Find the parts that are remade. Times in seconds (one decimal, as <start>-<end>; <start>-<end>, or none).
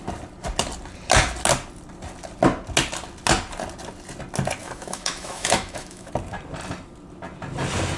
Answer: 4.6-6.1